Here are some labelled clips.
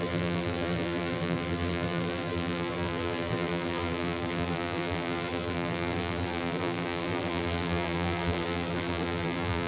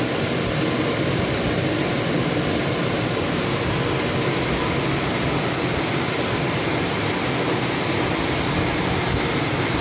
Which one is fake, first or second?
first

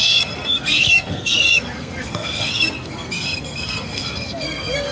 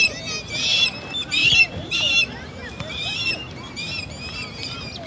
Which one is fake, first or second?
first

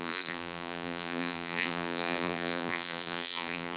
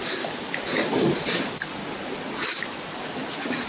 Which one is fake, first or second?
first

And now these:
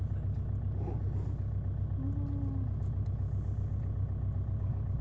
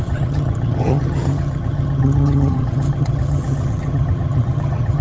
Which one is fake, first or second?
second